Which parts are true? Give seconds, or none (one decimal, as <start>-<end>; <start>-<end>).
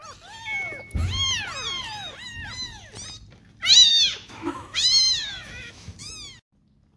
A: 0.0-3.9; 6.1-7.0